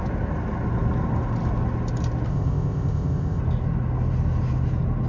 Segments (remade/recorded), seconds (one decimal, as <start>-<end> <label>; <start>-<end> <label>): 0.0-2.3 recorded; 2.3-3.4 remade; 3.4-5.1 recorded